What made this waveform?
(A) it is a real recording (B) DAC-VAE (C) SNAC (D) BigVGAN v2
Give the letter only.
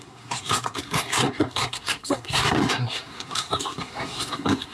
C